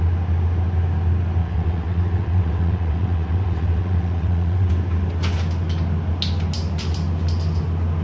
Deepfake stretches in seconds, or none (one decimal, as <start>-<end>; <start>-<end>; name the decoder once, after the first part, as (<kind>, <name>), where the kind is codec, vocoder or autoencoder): 1.4-4.7 (vocoder, WaveNeXt)